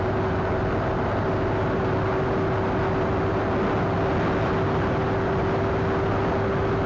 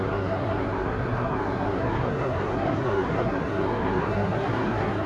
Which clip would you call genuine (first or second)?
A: first